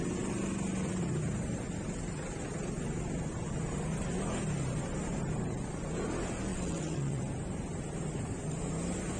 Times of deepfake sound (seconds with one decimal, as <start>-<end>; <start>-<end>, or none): 6.5-7.2

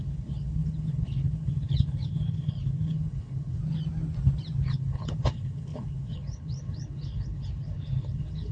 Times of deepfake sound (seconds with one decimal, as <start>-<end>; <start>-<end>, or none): 0.0-3.6; 4.6-8.5

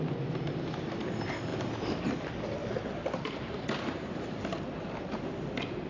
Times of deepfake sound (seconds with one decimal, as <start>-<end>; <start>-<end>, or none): 2.6-4.3

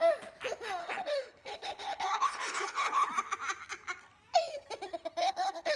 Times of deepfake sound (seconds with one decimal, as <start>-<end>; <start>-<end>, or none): 0.8-3.1; 5.2-5.8

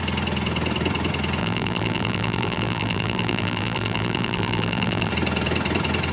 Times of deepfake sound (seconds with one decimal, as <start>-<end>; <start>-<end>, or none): 1.4-5.1

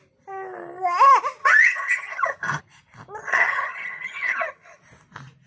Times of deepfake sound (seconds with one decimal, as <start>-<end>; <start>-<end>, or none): 1.4-2.6; 3.2-4.8

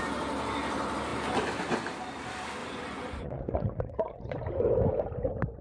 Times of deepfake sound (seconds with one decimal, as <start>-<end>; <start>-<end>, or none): 2.6-4.4

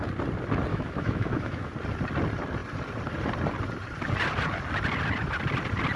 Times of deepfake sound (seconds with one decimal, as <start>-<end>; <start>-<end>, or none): 0.7-1.7